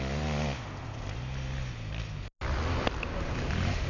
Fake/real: real